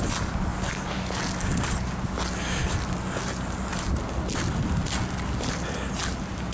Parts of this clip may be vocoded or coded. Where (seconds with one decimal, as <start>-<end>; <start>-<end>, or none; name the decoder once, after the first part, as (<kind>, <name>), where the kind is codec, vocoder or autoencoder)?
none